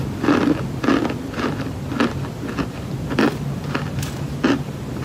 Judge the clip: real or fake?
fake